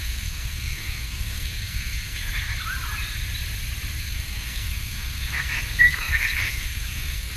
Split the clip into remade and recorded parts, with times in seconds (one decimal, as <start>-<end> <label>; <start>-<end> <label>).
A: 0.0-2.3 remade; 2.3-4.0 recorded; 4.0-7.4 remade

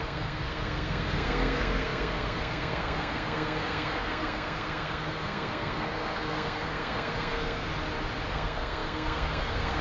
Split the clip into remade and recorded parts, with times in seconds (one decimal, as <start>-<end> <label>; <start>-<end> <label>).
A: 0.0-7.7 remade; 7.7-8.3 recorded; 8.3-9.8 remade

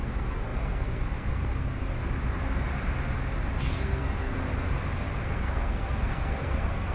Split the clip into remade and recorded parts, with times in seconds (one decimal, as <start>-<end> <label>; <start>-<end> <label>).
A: 0.0-1.8 remade; 1.8-3.6 recorded; 3.6-4.3 remade; 4.3-5.2 recorded; 5.2-6.9 remade